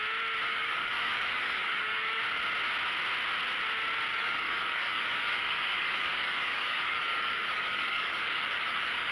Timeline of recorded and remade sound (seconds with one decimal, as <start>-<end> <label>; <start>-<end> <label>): 0.0-0.5 recorded; 0.5-2.2 remade; 2.2-4.1 recorded; 4.1-9.1 remade

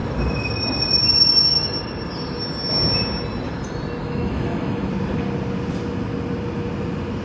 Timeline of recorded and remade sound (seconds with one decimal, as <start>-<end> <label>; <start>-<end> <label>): 0.0-4.0 recorded; 4.0-4.9 remade; 4.9-7.2 recorded

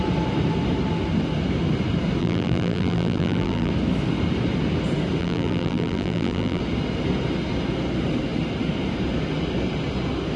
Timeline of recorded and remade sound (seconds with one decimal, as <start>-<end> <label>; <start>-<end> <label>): 0.0-2.2 recorded; 2.2-3.7 remade; 3.7-5.2 recorded; 5.2-6.6 remade; 6.6-10.4 recorded